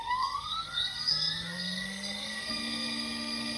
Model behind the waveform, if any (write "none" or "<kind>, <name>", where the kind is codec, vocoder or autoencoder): codec, SNAC